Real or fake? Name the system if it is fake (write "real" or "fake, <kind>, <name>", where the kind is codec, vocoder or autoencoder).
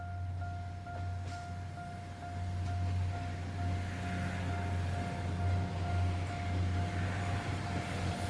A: real